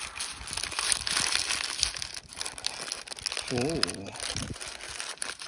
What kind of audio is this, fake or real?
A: real